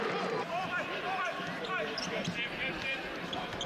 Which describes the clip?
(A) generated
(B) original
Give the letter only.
A